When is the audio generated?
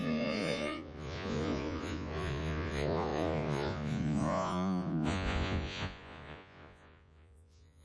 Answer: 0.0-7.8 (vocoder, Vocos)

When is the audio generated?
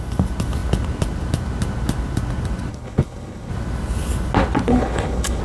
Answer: 2.7-3.5 (codec, HILCodec); 4.7-5.4